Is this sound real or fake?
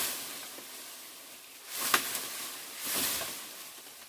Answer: real